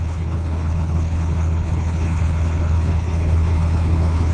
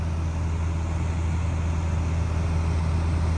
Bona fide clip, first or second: second